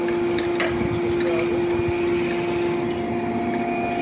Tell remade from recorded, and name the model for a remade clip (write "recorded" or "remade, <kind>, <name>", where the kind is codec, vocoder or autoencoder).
recorded